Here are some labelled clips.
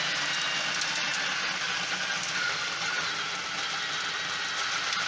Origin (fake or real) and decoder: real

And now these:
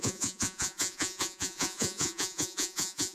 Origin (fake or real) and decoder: fake, vocoder, Vocos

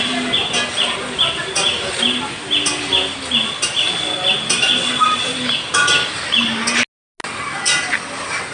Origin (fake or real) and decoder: real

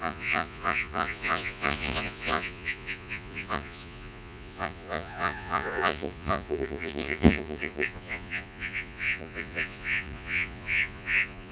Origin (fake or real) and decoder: fake, vocoder, Vocos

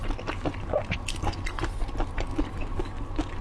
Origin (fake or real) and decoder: real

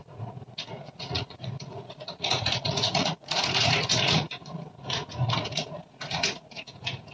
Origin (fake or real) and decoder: fake, vocoder, Vocos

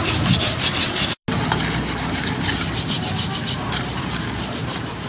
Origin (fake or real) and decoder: real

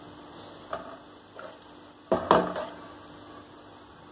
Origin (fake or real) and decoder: real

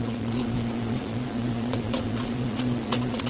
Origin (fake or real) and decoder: fake, vocoder, Vocos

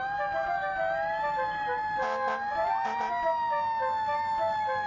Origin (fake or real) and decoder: real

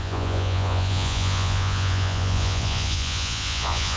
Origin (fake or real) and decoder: fake, vocoder, Vocos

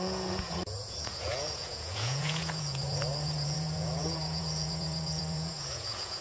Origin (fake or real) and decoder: fake, vocoder, Vocos